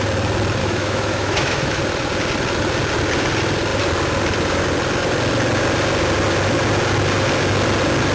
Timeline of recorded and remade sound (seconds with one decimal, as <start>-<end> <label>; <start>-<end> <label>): 0.0-0.6 recorded; 0.6-1.8 remade; 1.8-8.1 recorded